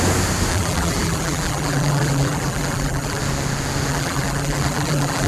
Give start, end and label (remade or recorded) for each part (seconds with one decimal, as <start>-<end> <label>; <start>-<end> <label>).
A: 0.0-0.5 recorded; 0.5-3.2 remade; 3.2-3.9 recorded; 3.9-5.3 remade